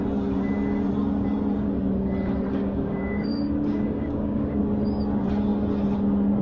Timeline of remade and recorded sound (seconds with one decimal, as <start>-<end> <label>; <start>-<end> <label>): 0.0-2.5 recorded; 2.5-4.6 remade; 4.6-6.4 recorded